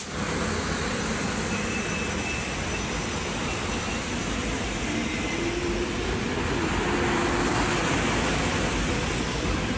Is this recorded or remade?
recorded